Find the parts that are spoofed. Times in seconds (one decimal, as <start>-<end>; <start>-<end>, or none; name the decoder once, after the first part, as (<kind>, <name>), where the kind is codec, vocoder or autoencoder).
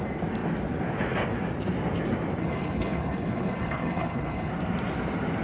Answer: 2.4-4.5 (codec, HILCodec)